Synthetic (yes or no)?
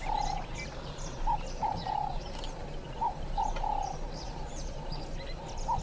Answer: no